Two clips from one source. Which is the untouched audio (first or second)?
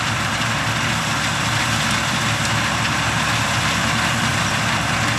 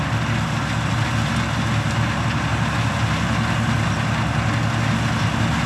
second